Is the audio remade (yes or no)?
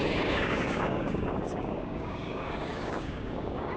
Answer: yes